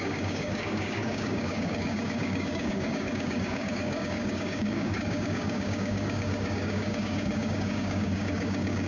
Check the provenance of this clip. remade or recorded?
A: remade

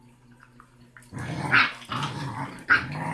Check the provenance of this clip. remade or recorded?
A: recorded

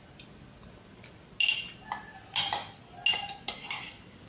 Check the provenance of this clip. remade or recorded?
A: recorded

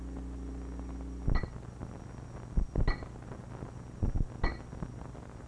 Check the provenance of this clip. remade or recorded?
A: recorded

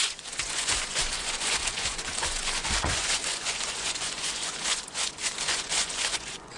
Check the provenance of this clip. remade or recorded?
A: remade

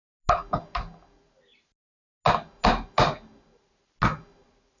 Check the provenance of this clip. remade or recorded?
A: recorded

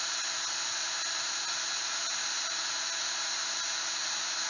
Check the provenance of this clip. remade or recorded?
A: recorded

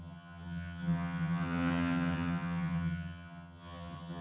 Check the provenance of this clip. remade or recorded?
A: remade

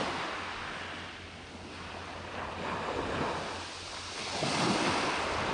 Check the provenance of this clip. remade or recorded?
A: recorded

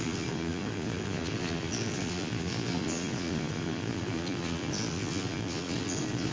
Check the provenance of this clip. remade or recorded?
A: remade